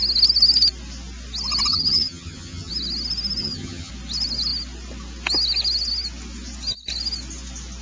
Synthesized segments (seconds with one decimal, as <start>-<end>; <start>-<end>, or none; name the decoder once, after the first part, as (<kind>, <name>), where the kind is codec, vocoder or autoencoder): 1.7-2.7 (vocoder, HiFi-GAN); 3.4-3.9